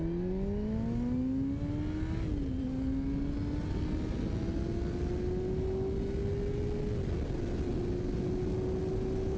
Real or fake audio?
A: real